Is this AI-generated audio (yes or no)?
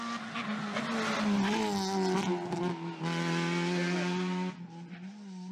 no